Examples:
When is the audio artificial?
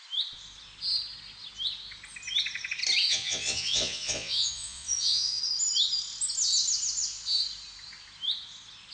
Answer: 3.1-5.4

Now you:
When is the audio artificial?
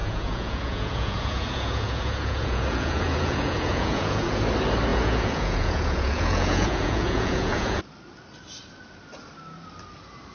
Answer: 0.0-4.4; 4.9-7.8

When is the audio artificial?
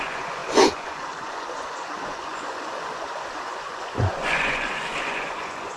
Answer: 0.0-5.8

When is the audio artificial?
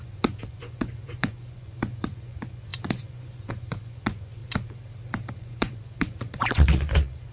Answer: 0.0-4.4; 5.3-7.3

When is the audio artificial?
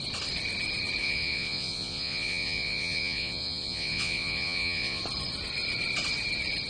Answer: 1.0-5.0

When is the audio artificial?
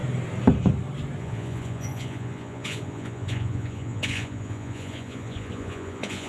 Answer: 1.2-6.3